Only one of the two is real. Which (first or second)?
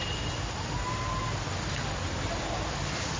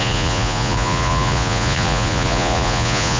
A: first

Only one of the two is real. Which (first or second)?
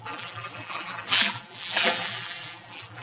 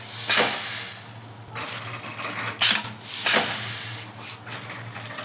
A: second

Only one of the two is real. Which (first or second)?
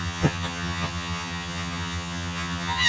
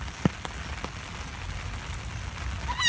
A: second